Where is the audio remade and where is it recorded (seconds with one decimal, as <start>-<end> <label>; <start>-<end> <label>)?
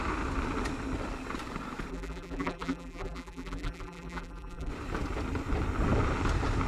0.0-1.9 recorded; 1.9-4.7 remade; 4.7-6.7 recorded